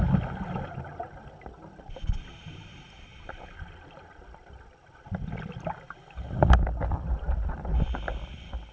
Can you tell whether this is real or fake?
real